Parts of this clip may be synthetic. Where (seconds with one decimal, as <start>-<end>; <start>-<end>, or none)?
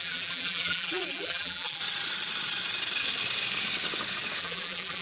0.0-1.8; 4.4-5.0